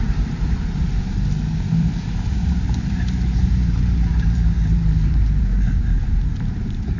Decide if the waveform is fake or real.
fake